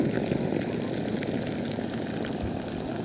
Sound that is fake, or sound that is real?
real